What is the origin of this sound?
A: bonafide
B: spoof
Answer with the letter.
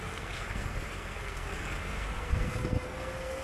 B